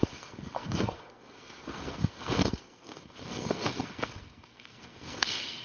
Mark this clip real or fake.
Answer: fake